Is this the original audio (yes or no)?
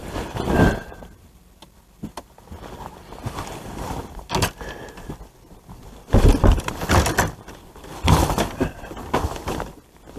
yes